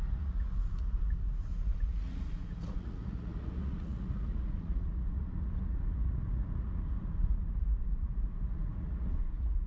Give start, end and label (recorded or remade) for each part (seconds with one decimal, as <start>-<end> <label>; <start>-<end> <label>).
0.0-9.7 remade